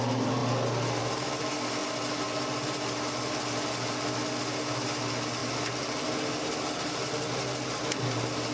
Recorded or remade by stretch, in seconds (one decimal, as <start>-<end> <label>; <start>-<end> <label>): 0.0-8.5 recorded